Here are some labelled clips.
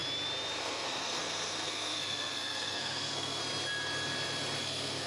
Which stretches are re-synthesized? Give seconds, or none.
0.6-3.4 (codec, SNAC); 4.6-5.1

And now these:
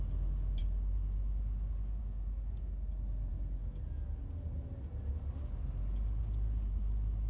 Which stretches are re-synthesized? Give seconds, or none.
none